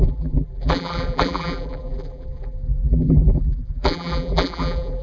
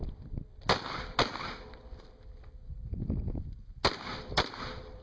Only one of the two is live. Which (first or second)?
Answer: second